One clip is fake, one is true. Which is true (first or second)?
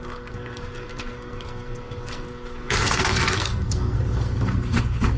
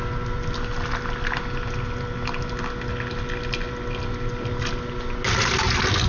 second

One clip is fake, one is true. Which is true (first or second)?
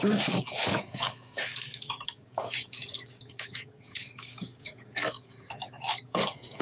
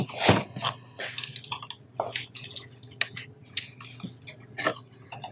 second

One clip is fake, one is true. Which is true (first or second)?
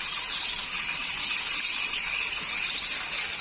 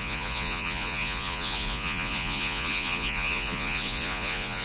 first